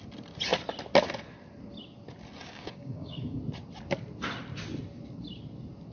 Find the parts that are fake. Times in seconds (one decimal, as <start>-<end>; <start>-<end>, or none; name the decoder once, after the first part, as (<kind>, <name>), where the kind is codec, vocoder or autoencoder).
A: 2.4-3.4 (codec, DAC)